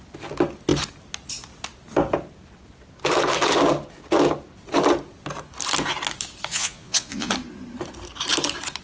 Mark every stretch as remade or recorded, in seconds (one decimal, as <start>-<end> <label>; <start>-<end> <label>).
0.0-6.5 recorded; 6.5-7.3 remade; 7.3-8.8 recorded